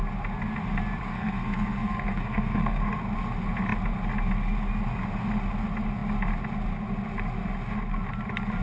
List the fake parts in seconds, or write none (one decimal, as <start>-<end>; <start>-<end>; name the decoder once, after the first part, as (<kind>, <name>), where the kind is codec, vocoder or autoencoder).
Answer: 1.1-2.8 (codec, SNAC)